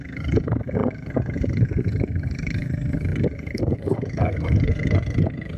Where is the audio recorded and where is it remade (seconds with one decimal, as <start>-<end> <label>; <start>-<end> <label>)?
0.0-5.6 remade